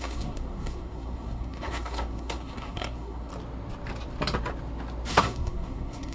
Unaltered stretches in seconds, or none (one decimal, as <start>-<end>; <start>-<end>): 3.3-5.1